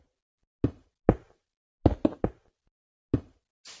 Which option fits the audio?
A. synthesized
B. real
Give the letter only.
B